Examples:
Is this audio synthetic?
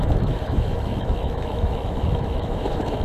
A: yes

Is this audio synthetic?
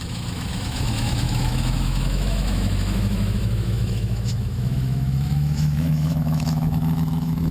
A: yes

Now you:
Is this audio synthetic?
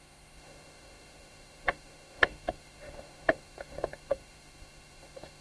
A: yes